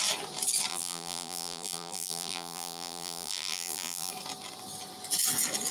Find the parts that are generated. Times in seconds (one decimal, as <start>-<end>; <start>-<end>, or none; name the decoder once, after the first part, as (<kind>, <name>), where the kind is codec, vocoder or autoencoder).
0.7-4.1 (vocoder, BigVGAN v2)